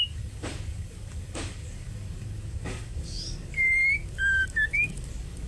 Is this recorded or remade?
remade